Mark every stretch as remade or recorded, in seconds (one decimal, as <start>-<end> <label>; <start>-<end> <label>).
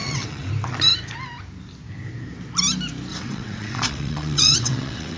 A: 0.0-0.5 remade; 0.5-3.1 recorded; 3.1-5.2 remade